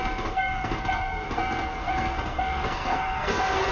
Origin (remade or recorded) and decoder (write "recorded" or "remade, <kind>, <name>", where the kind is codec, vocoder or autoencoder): remade, codec, SNAC